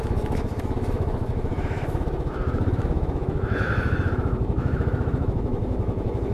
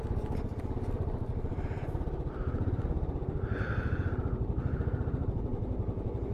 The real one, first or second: second